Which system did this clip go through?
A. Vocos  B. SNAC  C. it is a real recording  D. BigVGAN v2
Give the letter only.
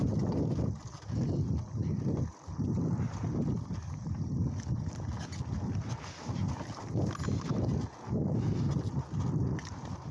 C